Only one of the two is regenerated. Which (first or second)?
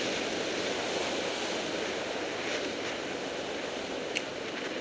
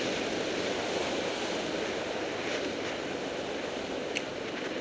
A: second